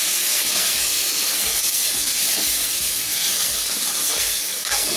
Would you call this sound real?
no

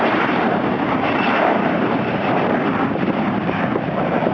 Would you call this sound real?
no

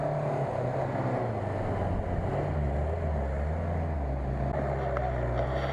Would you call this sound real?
yes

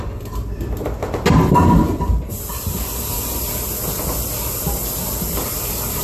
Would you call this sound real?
yes